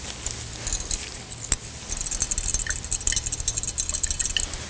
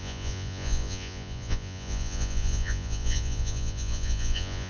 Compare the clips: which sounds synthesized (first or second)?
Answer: second